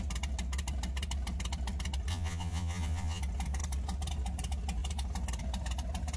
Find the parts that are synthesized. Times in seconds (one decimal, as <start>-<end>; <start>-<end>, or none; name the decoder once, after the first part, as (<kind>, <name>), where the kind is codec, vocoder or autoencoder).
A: 2.1-3.2 (vocoder, Vocos)